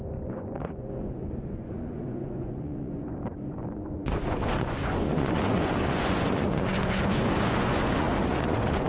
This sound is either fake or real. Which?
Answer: fake